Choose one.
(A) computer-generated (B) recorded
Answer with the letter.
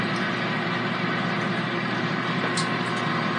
A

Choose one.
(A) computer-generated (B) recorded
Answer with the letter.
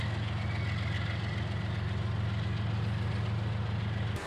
B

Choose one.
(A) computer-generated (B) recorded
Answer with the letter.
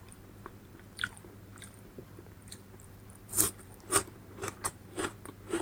A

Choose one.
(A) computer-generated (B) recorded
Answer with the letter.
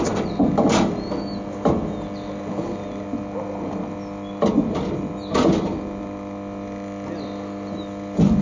B